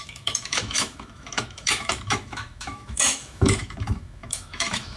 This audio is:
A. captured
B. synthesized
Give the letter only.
B